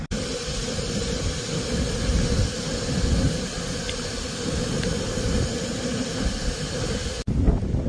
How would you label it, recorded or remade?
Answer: recorded